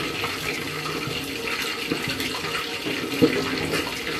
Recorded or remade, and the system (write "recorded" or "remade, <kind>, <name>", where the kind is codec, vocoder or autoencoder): recorded